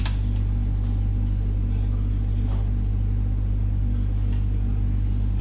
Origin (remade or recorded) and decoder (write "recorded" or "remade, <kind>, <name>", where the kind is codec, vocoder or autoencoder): recorded